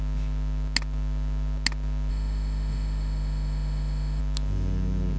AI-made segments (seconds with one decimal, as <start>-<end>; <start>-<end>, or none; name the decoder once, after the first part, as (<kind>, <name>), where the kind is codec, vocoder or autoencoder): 2.1-4.2 (autoencoder, DAC-VAE)